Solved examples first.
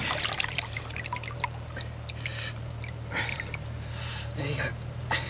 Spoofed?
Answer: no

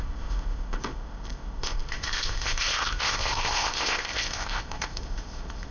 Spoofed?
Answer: yes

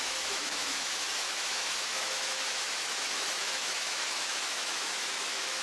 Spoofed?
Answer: yes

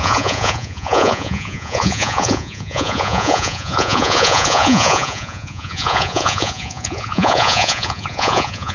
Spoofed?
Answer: yes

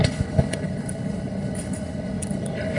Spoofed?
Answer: yes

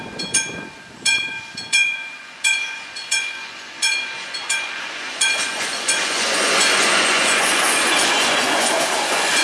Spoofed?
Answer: yes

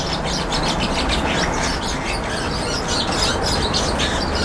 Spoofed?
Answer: no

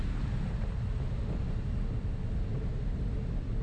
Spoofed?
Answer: no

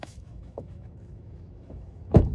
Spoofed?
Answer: yes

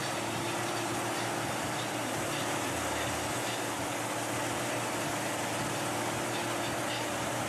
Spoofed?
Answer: no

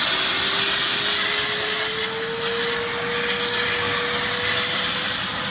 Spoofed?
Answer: no